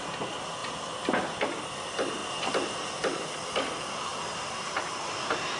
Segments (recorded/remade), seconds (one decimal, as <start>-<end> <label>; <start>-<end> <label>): 0.0-4.1 recorded; 4.1-4.7 remade; 4.7-5.6 recorded